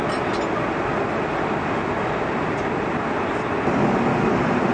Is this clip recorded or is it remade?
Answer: recorded